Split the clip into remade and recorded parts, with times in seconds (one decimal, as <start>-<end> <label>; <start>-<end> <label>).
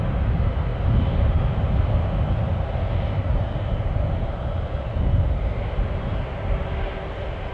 0.0-7.5 recorded